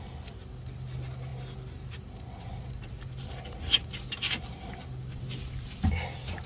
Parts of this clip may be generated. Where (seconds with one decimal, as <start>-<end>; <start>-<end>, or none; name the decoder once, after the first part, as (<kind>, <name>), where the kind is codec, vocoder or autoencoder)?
none